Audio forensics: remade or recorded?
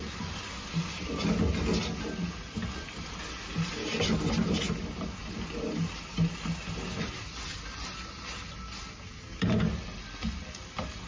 recorded